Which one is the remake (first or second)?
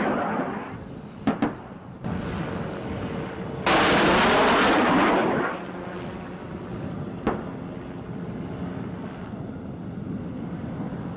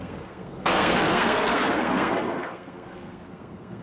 second